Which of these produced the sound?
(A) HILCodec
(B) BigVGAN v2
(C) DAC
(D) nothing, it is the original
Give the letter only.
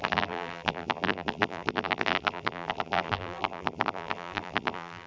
B